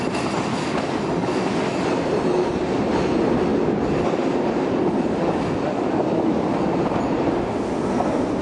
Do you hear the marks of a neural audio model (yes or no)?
no